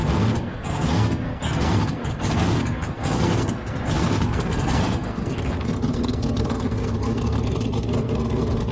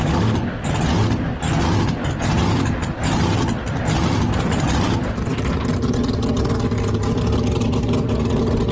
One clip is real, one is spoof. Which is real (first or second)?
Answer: second